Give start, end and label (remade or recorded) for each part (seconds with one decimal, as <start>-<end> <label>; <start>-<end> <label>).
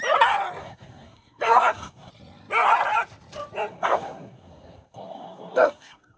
0.0-0.6 recorded; 0.6-2.1 remade; 2.1-3.7 recorded; 3.7-6.2 remade